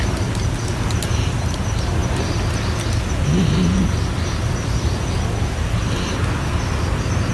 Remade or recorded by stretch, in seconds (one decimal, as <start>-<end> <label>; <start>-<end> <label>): 0.0-7.3 recorded